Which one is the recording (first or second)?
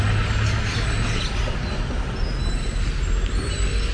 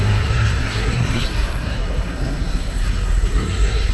first